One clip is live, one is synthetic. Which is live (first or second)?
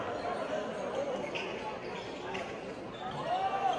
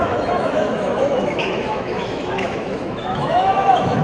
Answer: first